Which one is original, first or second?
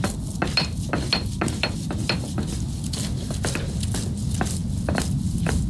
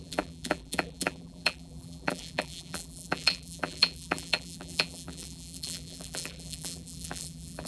first